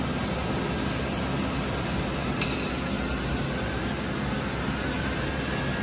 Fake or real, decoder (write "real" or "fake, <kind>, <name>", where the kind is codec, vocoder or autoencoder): real